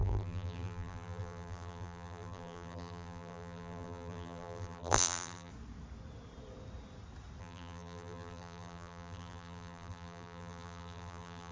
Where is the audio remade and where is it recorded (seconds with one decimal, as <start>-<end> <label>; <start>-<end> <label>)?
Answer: 0.0-5.5 remade; 5.5-7.4 recorded; 7.4-11.5 remade